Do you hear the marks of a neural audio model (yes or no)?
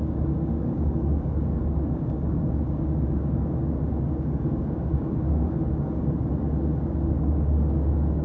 yes